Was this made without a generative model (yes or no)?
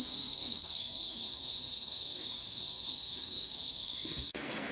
no